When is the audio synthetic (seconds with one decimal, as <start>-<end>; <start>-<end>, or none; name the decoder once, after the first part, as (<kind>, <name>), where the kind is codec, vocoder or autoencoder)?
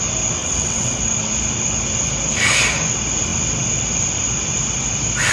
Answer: 0.4-1.0 (vocoder, WaveNeXt)